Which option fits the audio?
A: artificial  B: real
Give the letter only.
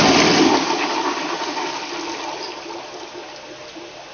B